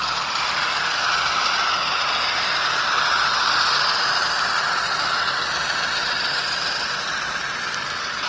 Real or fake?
real